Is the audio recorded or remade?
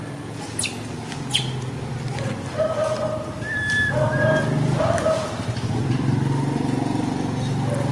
recorded